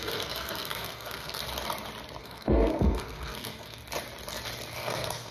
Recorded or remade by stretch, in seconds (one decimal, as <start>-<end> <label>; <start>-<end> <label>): 0.0-1.4 remade; 1.4-2.2 recorded; 2.2-3.8 remade; 3.8-4.7 recorded; 4.7-5.3 remade